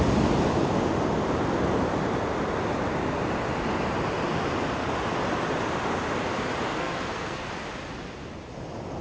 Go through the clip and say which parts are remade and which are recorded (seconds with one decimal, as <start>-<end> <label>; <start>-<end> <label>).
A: 0.0-6.7 recorded; 6.7-7.4 remade; 7.4-9.0 recorded